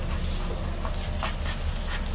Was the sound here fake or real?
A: real